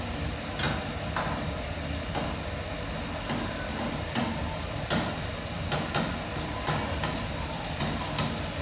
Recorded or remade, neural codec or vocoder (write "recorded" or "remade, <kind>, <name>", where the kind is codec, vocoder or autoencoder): recorded